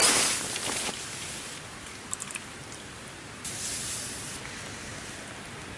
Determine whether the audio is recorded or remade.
recorded